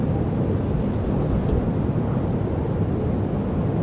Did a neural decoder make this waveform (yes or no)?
no